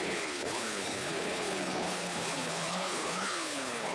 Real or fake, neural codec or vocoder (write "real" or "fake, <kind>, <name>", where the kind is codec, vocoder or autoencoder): fake, codec, HILCodec